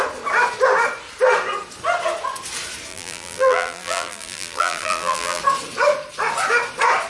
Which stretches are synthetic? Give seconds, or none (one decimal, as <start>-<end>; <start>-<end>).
2.9-5.4